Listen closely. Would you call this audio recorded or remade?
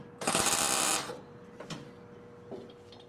recorded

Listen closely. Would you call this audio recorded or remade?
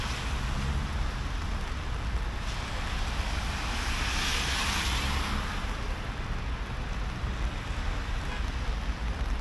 recorded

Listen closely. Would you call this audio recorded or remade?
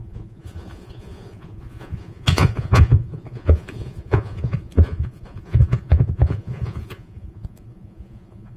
remade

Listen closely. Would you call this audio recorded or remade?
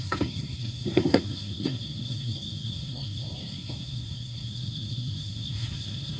remade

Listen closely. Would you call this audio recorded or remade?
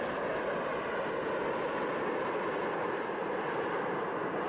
recorded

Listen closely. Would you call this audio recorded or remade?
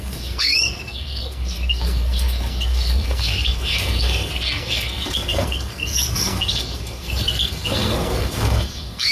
remade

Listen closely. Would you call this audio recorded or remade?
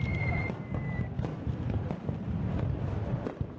recorded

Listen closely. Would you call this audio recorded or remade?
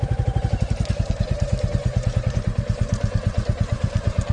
remade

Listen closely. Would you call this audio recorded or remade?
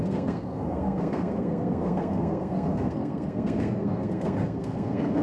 remade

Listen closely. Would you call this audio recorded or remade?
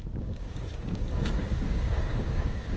remade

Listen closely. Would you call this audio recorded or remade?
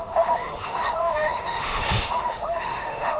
remade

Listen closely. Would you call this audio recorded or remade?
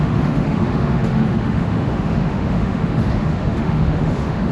remade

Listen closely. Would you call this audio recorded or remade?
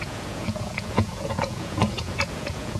remade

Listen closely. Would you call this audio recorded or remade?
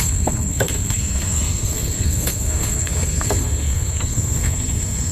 remade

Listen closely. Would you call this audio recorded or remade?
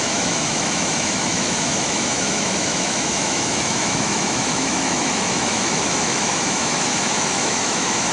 remade